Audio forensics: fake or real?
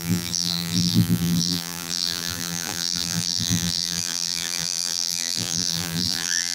fake